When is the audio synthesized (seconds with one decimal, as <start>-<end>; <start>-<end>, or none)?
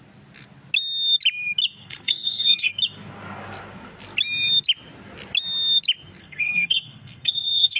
1.8-2.7; 6.2-7.8